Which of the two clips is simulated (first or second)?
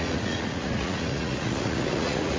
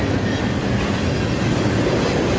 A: first